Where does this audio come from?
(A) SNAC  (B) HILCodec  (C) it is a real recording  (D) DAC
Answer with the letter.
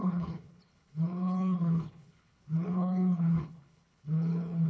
B